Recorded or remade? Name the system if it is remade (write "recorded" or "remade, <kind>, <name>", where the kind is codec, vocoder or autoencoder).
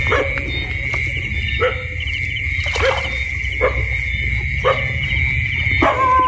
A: recorded